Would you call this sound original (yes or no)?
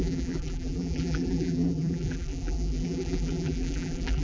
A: no